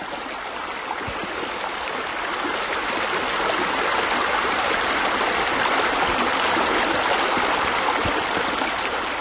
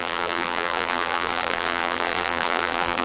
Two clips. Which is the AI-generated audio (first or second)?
second